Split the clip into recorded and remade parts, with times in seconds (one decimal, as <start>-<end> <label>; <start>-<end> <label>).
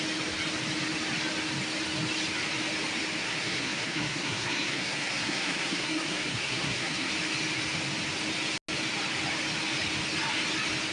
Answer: 0.0-3.2 recorded; 3.2-7.1 remade; 7.1-10.9 recorded